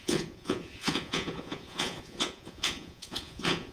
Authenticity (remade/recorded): remade